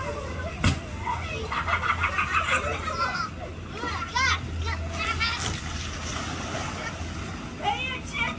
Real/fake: real